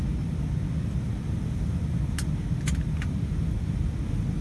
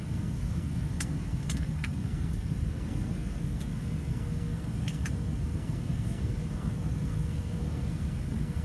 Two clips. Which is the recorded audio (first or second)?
first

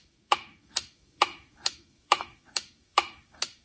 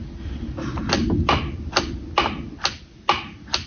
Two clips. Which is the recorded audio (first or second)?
second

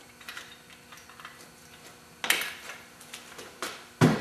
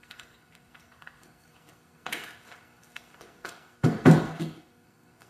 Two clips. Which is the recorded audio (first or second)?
first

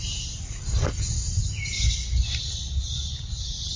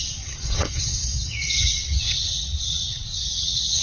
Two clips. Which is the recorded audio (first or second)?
first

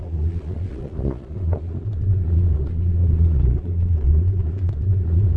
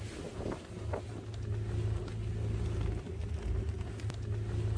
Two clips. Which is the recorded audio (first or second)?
second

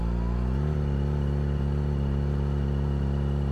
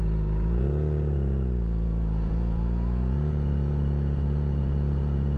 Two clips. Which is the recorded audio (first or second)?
first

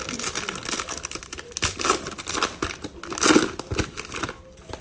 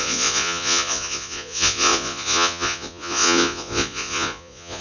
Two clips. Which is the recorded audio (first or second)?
first